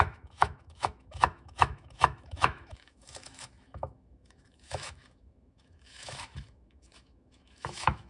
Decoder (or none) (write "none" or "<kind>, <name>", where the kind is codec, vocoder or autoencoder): autoencoder, DAC-VAE